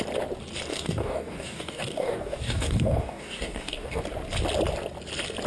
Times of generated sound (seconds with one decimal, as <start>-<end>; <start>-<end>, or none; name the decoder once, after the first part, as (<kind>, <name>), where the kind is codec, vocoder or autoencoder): 0.7-4.0 (codec, DAC)